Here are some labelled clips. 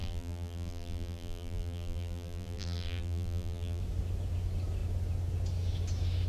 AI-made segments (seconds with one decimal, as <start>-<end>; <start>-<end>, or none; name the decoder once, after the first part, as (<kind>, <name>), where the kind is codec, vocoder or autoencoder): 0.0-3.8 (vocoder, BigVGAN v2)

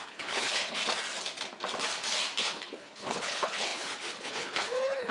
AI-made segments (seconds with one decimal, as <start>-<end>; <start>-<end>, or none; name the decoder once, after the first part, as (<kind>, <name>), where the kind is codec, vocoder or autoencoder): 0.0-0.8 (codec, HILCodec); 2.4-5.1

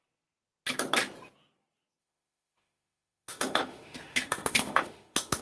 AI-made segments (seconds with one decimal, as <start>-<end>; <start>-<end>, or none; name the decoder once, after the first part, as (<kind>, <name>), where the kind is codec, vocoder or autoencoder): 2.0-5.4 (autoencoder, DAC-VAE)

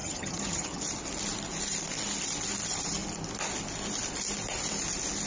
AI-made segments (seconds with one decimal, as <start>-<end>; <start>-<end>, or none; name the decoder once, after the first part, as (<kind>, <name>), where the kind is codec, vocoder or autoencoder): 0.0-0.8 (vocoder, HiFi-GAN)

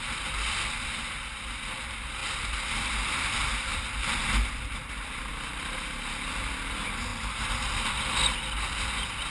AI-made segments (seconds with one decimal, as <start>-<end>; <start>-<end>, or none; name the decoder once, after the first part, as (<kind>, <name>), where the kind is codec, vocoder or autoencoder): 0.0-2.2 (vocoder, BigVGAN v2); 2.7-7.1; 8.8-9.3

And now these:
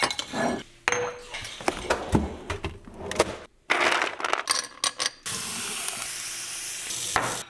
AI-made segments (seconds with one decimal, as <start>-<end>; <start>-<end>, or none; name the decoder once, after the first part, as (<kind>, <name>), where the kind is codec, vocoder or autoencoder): 1.4-2.0 (vocoder, BigVGAN v2)

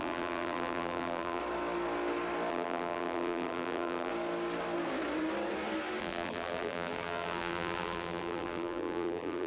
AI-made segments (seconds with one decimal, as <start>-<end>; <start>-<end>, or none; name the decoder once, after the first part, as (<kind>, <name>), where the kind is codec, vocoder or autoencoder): 0.0-1.4 (vocoder, BigVGAN v2); 2.5-4.1; 6.0-9.5

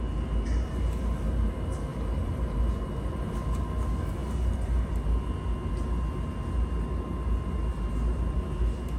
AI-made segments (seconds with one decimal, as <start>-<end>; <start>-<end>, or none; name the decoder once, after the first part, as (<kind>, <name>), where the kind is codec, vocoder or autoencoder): 1.9-3.3 (vocoder, BigVGAN v2); 4.2-4.9